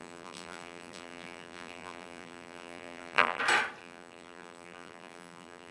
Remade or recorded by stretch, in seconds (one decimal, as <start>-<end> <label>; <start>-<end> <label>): 0.0-3.4 remade; 3.4-3.8 recorded; 3.8-5.7 remade